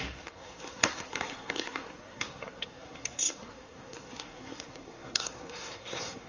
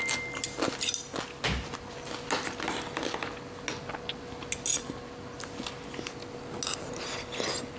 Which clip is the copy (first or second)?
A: first